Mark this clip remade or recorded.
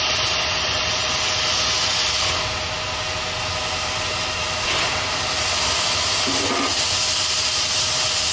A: recorded